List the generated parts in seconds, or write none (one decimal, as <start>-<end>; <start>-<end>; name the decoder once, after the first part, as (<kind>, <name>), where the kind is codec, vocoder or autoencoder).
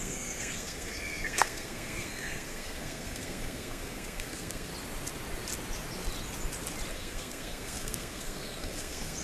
0.0-4.7 (codec, SNAC); 6.9-9.2